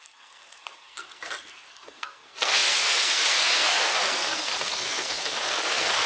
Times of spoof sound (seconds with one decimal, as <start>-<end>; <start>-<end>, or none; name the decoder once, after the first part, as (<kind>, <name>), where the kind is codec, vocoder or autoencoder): 0.0-6.1 (codec, SNAC)